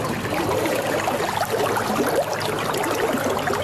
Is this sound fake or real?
real